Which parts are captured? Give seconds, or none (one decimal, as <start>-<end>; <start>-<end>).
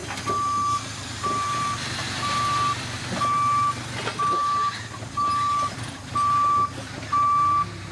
0.0-7.9